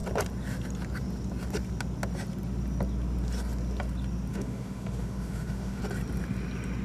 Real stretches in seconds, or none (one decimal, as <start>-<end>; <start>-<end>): 0.0-4.3; 5.8-6.8